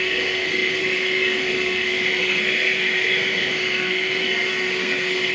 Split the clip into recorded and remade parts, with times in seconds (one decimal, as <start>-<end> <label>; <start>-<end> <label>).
0.0-5.3 remade